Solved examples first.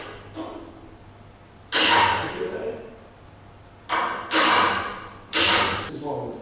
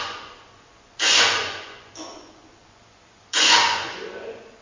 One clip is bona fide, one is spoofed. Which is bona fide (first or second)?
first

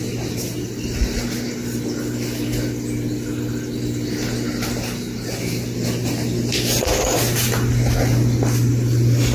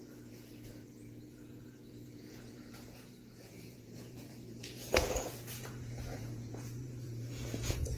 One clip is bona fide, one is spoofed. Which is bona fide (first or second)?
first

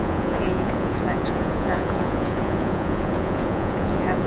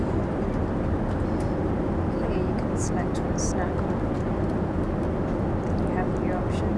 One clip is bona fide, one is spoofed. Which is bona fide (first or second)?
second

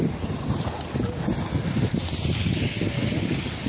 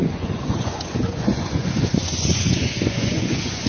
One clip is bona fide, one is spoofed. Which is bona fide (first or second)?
first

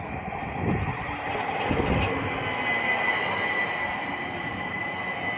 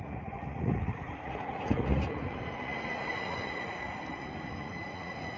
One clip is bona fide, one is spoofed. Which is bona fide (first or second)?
first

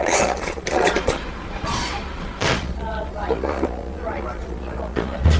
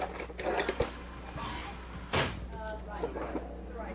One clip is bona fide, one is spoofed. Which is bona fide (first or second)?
second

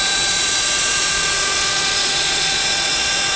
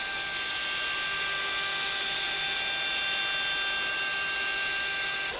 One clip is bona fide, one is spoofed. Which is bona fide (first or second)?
second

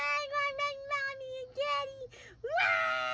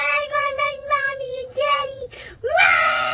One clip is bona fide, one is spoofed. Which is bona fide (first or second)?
first